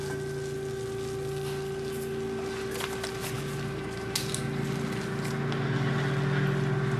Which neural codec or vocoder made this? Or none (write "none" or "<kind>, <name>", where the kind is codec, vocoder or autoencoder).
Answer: none